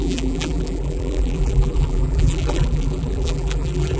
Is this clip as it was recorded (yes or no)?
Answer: no